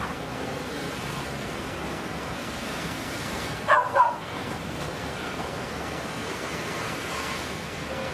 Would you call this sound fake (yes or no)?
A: yes